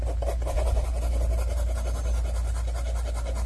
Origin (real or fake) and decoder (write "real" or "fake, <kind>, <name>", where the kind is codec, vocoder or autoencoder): real